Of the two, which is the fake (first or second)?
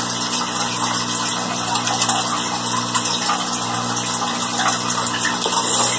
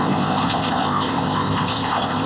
second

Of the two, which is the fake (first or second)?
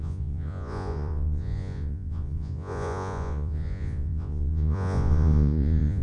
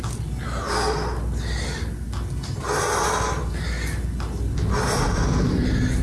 first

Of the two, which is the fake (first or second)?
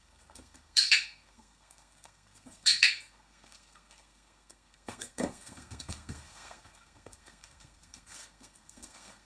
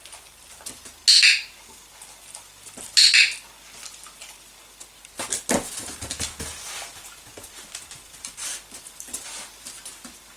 first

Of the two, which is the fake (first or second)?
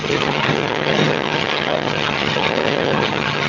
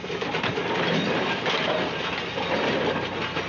first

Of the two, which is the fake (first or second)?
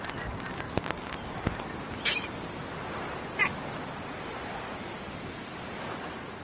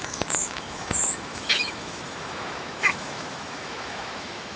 second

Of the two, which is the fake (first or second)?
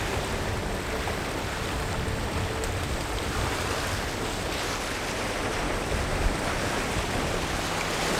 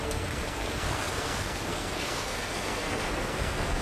second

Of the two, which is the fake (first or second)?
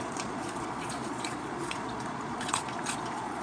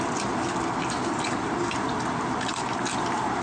first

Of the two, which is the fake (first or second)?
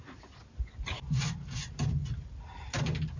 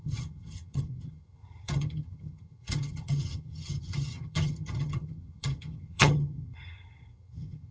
second